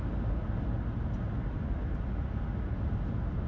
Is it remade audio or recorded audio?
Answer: recorded